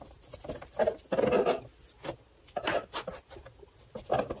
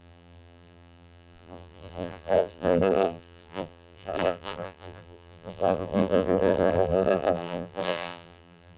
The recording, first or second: first